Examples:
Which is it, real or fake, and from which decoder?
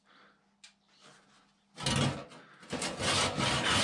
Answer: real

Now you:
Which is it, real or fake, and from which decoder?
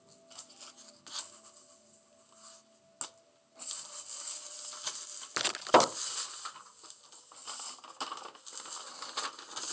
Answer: real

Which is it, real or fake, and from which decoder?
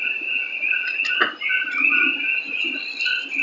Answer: real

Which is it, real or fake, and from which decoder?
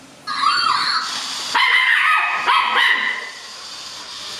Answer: real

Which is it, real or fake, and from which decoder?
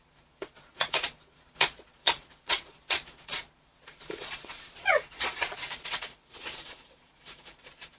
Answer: fake, vocoder, Vocos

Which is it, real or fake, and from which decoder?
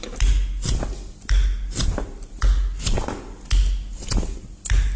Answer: real